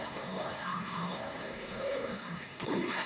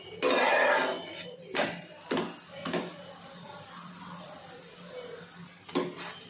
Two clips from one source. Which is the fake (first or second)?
first